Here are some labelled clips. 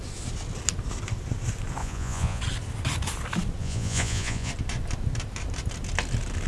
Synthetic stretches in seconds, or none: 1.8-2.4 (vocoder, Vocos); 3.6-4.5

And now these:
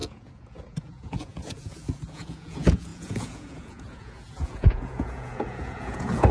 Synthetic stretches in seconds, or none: 0.0-6.3 (vocoder, Vocos)

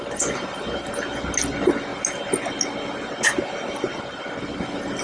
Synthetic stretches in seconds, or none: none